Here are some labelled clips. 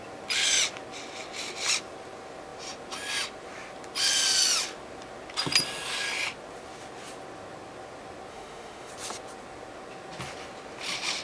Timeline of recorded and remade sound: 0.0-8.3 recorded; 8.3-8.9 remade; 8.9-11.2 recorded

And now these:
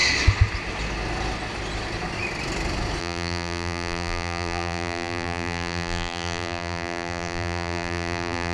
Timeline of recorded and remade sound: 0.0-3.0 recorded; 3.0-8.5 remade